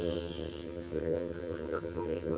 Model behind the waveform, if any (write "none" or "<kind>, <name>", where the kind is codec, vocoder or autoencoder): vocoder, HiFi-GAN